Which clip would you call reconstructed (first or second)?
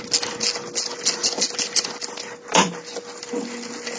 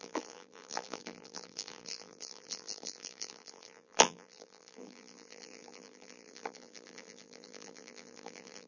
second